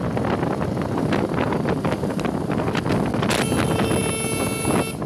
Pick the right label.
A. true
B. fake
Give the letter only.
A